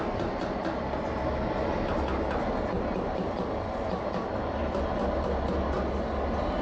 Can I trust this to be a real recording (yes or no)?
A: yes